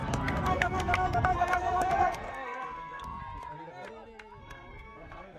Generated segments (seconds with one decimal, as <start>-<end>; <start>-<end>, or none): 0.0-3.2; 4.4-5.4